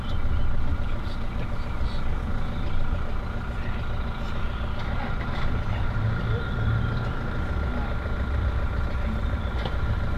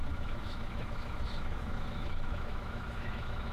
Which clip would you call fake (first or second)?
second